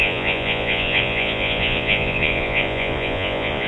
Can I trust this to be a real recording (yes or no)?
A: no